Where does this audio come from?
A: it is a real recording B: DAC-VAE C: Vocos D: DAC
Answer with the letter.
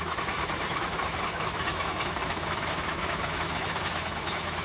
B